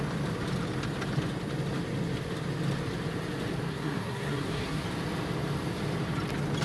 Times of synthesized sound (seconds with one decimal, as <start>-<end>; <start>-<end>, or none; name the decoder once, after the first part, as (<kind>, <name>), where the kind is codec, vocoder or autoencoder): 3.7-4.8 (codec, SNAC)